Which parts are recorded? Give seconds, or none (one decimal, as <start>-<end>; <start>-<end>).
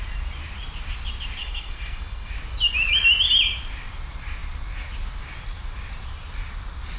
0.0-1.4; 2.3-7.0